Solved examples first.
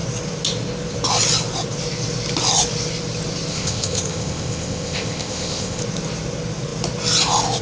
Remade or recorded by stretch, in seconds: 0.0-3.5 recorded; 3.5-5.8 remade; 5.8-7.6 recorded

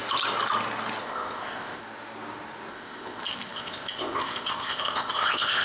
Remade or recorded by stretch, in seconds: 0.0-1.0 recorded; 1.0-1.8 remade; 1.8-2.7 recorded; 2.7-5.6 remade

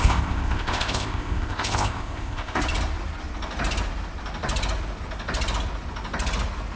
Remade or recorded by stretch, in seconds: 0.0-2.6 remade; 2.6-6.8 recorded

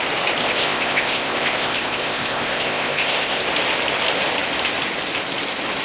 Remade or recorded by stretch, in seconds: 0.0-0.4 recorded; 0.4-3.5 remade; 3.5-5.8 recorded

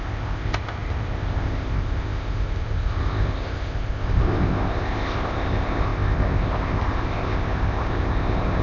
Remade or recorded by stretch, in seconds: 0.0-8.6 remade

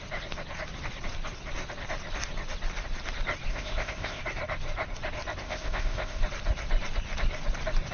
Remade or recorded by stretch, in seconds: 0.0-3.5 recorded; 3.5-4.2 remade; 4.2-5.4 recorded; 5.4-6.2 remade; 6.2-7.9 recorded